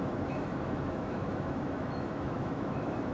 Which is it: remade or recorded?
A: remade